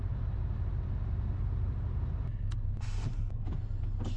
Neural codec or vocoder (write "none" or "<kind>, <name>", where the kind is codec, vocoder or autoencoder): vocoder, BigVGAN v2